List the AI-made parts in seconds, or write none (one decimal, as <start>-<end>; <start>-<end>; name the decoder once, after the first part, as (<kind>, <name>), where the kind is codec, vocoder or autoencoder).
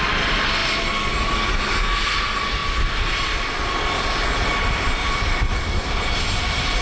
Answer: none